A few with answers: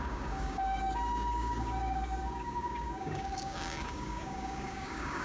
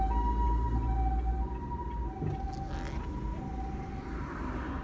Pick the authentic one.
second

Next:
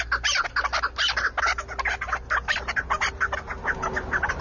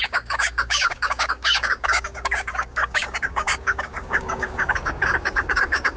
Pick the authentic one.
first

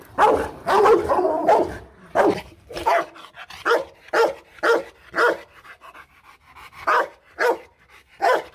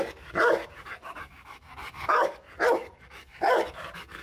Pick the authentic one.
first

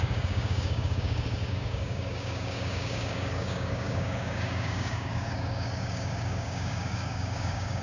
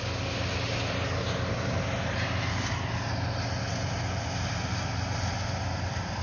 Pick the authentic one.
second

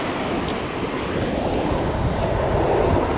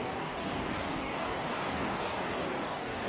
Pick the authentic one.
first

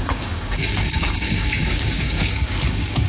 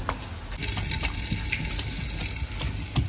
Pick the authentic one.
second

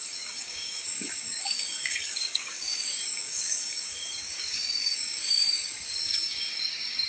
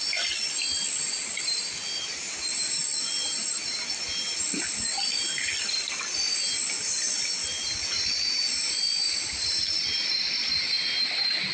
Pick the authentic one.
second